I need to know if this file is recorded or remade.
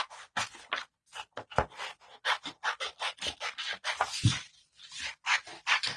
recorded